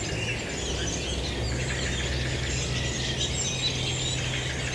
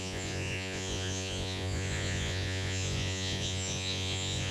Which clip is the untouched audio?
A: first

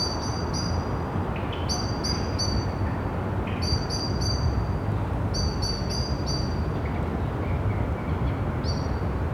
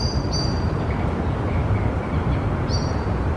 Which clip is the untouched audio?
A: first